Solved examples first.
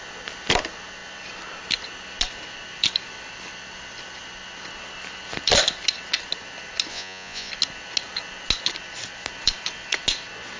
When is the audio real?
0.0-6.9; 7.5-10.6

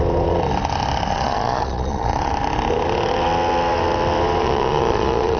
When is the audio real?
0.0-1.1; 2.3-4.4